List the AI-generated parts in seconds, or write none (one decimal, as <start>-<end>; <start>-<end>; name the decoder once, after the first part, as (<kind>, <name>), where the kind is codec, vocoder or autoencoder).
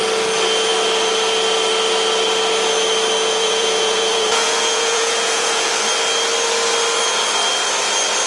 3.2-5.7 (vocoder, Vocos)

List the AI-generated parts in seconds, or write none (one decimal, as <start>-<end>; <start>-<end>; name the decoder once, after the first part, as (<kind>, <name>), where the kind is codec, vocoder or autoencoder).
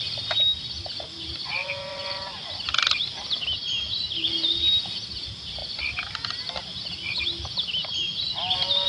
1.6-2.5 (vocoder, Vocos)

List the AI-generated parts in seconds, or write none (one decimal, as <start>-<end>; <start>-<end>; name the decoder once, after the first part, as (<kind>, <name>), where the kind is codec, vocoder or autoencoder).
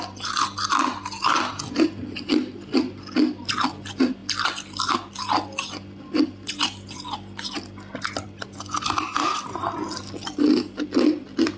none